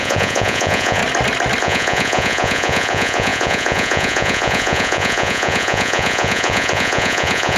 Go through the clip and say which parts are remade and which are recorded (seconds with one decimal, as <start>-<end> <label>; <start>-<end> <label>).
0.0-1.0 remade; 1.0-1.6 recorded; 1.6-7.6 remade

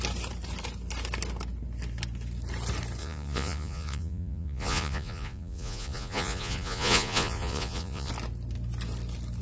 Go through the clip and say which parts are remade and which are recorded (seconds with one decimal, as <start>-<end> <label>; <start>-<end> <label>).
0.0-3.0 recorded; 3.0-8.1 remade; 8.1-9.4 recorded